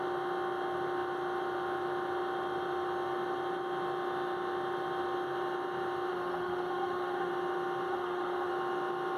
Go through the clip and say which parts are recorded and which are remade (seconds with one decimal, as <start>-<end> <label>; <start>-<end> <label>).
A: 0.0-6.1 recorded; 6.1-7.3 remade; 7.3-7.9 recorded; 7.9-8.5 remade; 8.5-9.2 recorded